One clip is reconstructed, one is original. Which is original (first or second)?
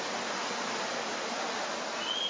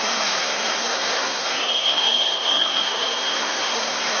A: first